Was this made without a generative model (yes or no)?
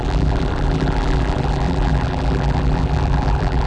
no